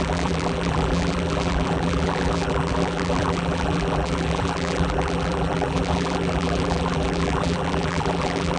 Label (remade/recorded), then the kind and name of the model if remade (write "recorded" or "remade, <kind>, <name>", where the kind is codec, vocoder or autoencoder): remade, vocoder, BigVGAN v2